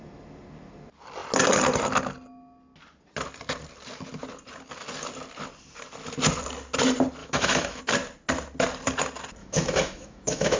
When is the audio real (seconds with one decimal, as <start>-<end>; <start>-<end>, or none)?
0.0-7.2; 7.8-9.4